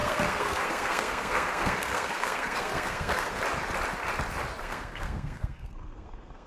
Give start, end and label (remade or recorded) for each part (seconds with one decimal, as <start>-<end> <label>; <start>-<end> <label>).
0.0-3.4 remade; 3.4-4.6 recorded; 4.6-6.5 remade